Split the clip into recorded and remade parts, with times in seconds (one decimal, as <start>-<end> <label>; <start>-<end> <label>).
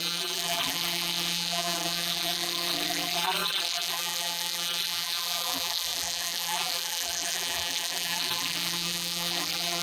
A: 0.0-9.8 remade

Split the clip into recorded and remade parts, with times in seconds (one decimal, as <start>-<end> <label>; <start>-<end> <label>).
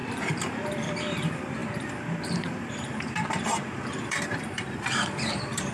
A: 0.0-5.7 remade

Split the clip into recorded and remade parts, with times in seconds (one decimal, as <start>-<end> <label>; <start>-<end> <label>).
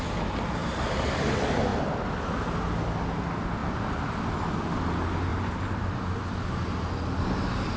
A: 0.0-0.6 recorded; 0.6-1.2 remade; 1.2-5.3 recorded; 5.3-5.9 remade; 5.9-7.8 recorded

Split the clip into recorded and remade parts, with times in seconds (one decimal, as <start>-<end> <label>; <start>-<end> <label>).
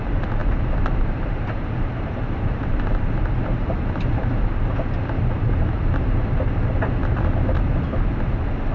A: 0.0-0.4 recorded; 0.4-4.7 remade; 4.7-8.7 recorded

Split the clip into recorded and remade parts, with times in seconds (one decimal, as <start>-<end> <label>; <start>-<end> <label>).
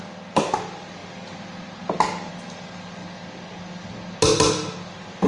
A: 0.0-5.3 recorded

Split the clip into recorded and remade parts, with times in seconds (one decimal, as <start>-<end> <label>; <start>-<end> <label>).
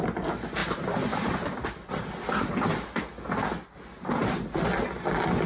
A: 0.0-0.6 recorded; 0.6-2.0 remade; 2.0-5.5 recorded